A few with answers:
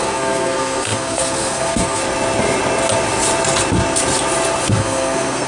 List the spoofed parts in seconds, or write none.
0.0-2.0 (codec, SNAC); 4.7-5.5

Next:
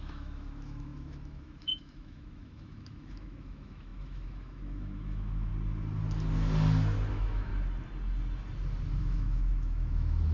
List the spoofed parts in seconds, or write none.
0.0-5.5 (autoencoder, DAC-VAE); 7.1-7.5; 9.0-10.3

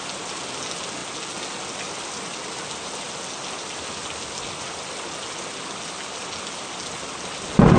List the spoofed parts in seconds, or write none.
none

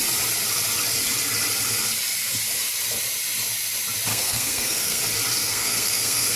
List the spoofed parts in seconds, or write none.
4.1-5.0 (codec, SNAC); 5.4-6.4

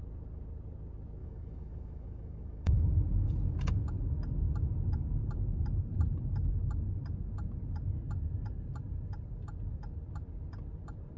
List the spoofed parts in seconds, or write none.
1.2-2.9 (autoencoder, DAC-VAE)

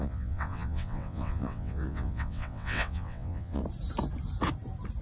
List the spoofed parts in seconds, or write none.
0.0-3.6 (vocoder, WaveNeXt)